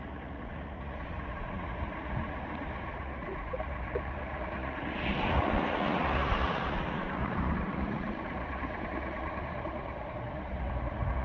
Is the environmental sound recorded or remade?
remade